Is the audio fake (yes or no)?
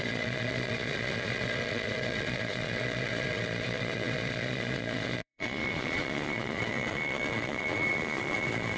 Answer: yes